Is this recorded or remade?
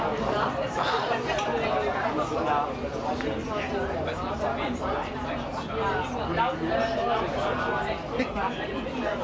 recorded